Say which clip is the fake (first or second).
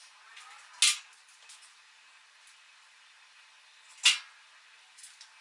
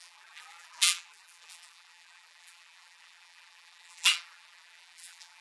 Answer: second